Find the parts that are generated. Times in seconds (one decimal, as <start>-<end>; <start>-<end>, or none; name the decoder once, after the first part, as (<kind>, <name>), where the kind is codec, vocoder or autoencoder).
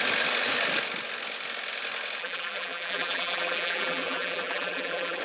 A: 2.2-5.2 (vocoder, BigVGAN v2)